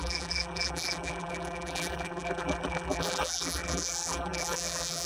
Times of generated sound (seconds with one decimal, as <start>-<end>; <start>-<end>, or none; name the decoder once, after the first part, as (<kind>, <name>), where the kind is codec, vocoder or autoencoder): 0.0-5.1 (vocoder, BigVGAN v2)